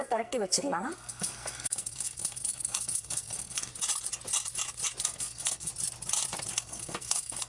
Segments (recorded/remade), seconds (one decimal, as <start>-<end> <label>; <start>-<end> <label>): 0.0-3.7 remade; 3.7-5.0 recorded; 5.0-5.7 remade; 5.7-6.5 recorded; 6.5-7.5 remade